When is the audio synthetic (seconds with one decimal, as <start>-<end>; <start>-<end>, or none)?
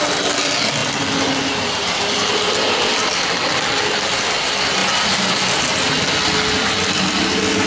none